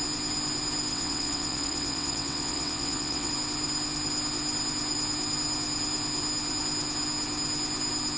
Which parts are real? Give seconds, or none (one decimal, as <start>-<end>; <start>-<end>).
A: 0.0-0.9; 3.3-8.2